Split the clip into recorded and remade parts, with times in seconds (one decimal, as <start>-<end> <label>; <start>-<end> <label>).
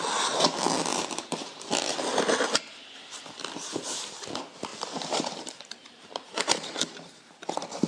0.0-0.9 recorded; 0.9-2.2 remade; 2.2-4.7 recorded; 4.7-7.4 remade; 7.4-7.9 recorded